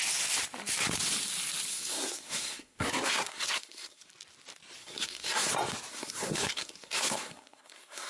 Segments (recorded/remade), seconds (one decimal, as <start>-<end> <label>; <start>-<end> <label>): 0.0-1.7 recorded; 1.7-4.1 remade; 4.1-4.8 recorded; 4.8-5.5 remade; 5.5-5.9 recorded; 5.9-8.1 remade